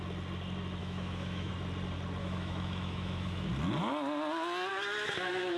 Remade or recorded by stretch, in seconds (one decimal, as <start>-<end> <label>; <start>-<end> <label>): 0.0-0.8 recorded; 0.8-1.5 remade; 1.5-2.2 recorded; 2.2-3.5 remade; 3.5-4.7 recorded; 4.7-5.6 remade